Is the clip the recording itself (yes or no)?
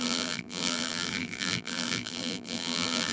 no